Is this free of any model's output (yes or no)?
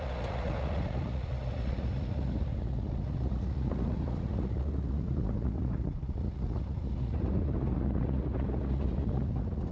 no